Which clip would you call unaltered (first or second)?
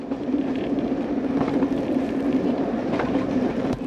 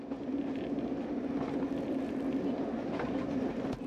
second